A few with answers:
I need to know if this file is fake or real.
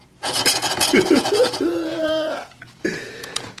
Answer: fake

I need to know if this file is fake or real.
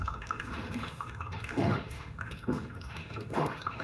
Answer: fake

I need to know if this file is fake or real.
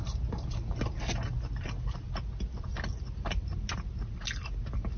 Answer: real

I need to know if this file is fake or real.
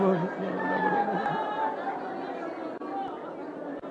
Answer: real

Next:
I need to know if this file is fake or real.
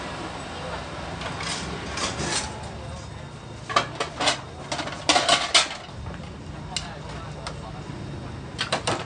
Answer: real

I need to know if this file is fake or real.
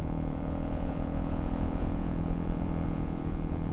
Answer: fake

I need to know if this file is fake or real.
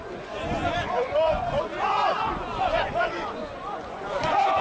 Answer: fake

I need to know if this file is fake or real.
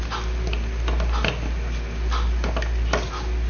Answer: real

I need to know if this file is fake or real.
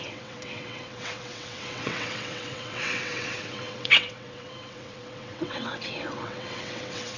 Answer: fake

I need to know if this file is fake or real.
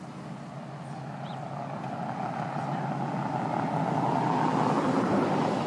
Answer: real